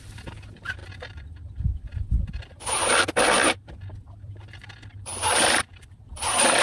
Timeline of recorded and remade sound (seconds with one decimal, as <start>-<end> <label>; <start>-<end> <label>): 0.0-6.6 remade